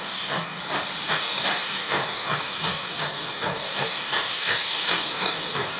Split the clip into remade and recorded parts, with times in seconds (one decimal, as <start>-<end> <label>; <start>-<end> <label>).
0.0-0.6 remade; 0.6-1.1 recorded; 1.1-5.8 remade